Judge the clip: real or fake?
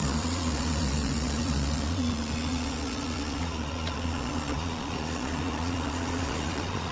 fake